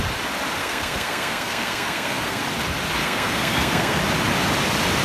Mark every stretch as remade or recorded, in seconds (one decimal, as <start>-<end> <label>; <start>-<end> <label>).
0.0-0.6 recorded; 0.6-2.4 remade; 2.4-3.0 recorded; 3.0-4.0 remade; 4.0-5.0 recorded